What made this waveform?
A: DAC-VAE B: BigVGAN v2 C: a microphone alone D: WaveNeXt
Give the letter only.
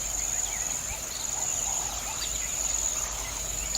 C